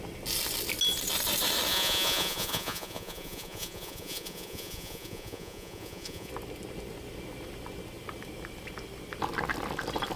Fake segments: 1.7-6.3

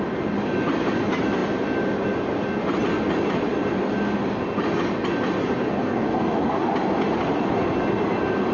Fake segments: 5.8-6.7

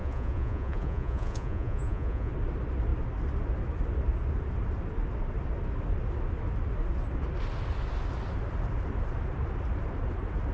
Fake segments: 0.0-2.3

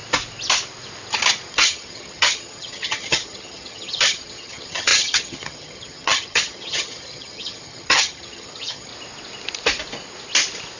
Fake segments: 1.5-8.9